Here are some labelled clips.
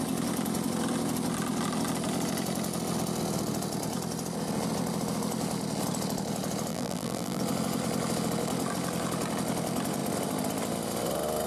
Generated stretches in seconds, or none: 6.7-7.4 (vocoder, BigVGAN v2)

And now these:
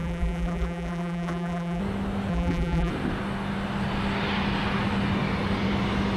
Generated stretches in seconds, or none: 0.0-1.8 (vocoder, BigVGAN v2); 2.3-2.9

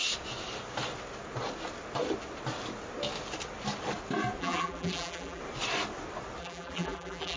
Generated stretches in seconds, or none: 4.4-5.4 (vocoder, BigVGAN v2); 6.4-7.4

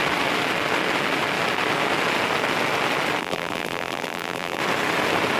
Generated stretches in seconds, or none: 3.2-4.6 (vocoder, BigVGAN v2)

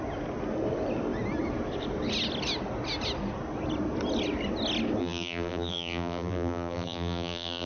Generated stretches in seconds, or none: 5.0-7.7 (vocoder, BigVGAN v2)

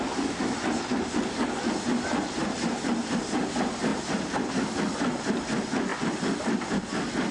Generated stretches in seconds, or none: 2.4-2.9 (vocoder, BigVGAN v2); 3.9-4.5; 5.9-6.7